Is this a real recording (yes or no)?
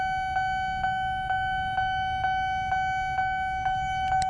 yes